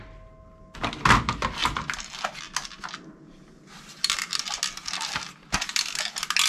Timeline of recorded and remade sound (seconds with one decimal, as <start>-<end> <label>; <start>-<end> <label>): 0.0-6.5 recorded